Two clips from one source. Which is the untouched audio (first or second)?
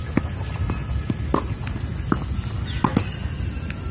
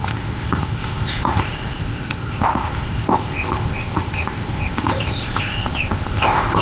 first